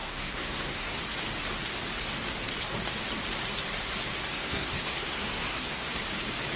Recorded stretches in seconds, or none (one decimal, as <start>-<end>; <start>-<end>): 1.0-4.3; 6.0-6.6